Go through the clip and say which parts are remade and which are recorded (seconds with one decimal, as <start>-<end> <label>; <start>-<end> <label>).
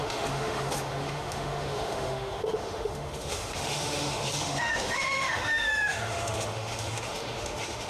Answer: 0.0-7.9 remade